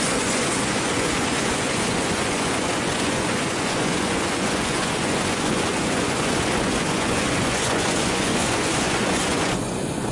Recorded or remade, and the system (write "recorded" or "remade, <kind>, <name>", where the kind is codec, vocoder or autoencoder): remade, vocoder, Vocos